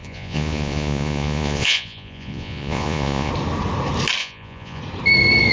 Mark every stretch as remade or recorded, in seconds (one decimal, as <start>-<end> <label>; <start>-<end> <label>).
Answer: 0.0-3.3 remade; 3.3-4.2 recorded; 4.2-4.8 remade; 4.8-5.5 recorded